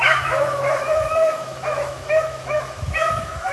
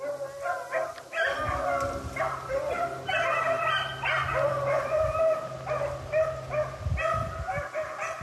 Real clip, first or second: second